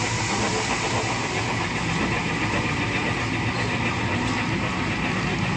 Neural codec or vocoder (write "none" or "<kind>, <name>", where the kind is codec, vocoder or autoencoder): none